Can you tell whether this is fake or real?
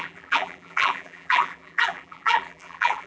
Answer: fake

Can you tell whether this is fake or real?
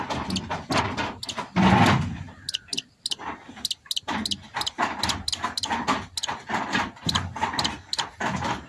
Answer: real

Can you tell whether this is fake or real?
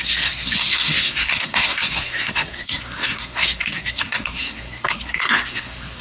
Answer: fake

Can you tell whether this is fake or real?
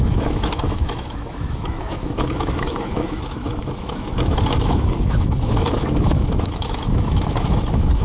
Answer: fake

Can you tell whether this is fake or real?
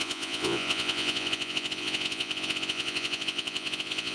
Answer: fake